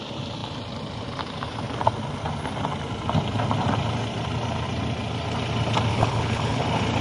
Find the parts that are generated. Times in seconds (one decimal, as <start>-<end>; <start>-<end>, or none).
5.9-6.6